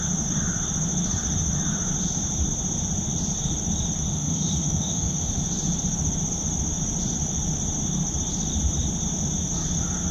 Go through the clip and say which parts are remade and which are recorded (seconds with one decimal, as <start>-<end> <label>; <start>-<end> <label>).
0.0-4.1 recorded; 4.1-5.3 remade; 5.3-10.1 recorded